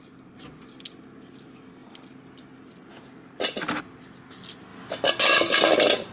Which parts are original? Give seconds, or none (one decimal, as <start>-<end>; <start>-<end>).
0.0-6.1